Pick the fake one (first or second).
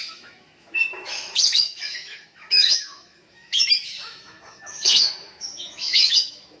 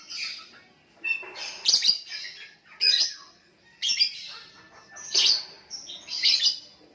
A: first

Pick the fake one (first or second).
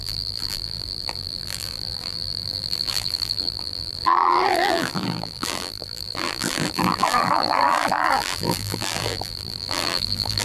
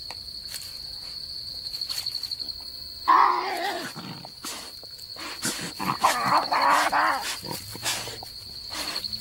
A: first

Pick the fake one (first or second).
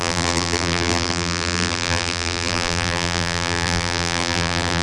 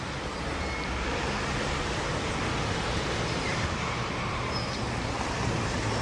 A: first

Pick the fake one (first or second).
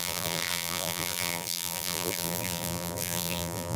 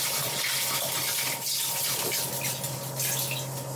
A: first